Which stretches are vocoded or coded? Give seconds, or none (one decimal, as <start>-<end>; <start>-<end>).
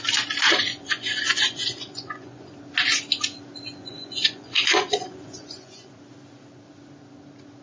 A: 0.7-2.5; 3.8-5.9